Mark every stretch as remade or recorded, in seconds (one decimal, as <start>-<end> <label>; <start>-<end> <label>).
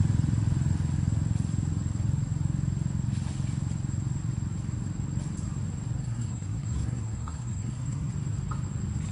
0.0-6.0 recorded; 6.0-8.1 remade; 8.1-9.1 recorded